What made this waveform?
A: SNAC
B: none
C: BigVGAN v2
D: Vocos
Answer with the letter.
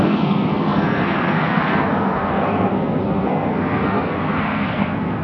A